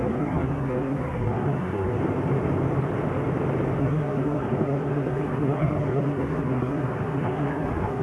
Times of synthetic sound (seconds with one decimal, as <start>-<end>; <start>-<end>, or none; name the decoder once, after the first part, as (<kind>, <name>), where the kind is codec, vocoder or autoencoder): 0.0-2.0 (codec, SNAC); 3.8-8.0